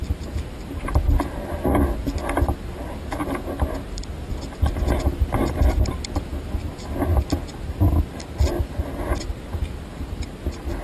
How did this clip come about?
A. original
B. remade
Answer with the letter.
A